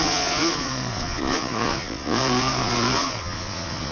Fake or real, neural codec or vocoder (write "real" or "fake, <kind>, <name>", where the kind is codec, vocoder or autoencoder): fake, vocoder, Vocos